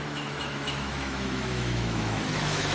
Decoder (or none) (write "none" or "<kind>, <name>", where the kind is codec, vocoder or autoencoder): autoencoder, DAC-VAE